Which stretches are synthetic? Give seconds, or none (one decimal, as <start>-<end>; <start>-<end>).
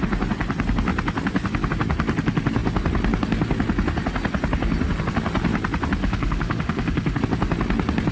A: 6.0-7.2